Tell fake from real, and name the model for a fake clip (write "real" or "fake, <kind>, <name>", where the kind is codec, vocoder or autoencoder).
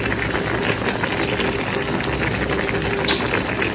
real